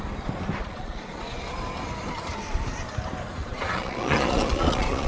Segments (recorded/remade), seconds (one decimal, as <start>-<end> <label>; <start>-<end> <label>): 0.0-0.6 recorded; 0.6-1.2 remade; 1.2-3.4 recorded; 3.4-5.1 remade